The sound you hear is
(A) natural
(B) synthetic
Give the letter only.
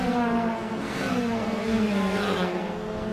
B